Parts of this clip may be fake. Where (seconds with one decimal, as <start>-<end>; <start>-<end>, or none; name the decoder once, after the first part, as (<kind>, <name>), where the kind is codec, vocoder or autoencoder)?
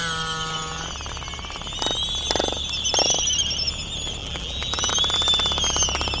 4.2-4.9 (vocoder, BigVGAN v2)